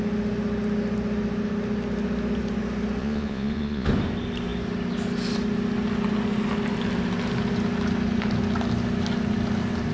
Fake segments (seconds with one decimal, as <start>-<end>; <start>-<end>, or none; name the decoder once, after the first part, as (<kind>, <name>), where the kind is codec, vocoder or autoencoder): 3.0-3.9 (vocoder, Vocos)